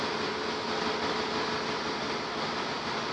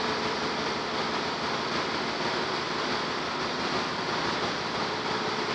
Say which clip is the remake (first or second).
second